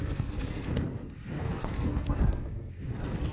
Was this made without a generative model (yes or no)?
no